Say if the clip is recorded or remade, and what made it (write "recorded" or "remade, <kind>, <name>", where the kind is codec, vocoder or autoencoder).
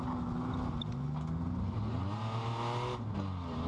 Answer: recorded